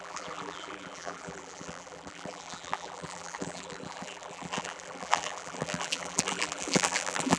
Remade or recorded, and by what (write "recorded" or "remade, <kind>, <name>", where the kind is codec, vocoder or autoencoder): remade, vocoder, BigVGAN v2